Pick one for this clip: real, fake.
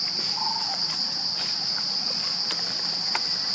real